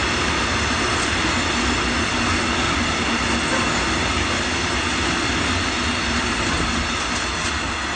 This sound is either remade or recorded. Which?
recorded